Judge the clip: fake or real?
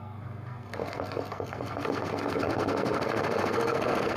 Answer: fake